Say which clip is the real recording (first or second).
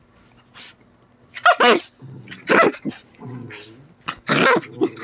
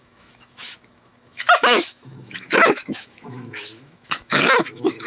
first